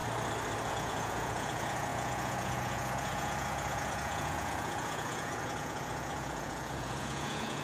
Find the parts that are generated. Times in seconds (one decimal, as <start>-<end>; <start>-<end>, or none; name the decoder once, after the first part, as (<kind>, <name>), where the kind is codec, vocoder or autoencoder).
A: 0.7-7.6 (vocoder, Vocos)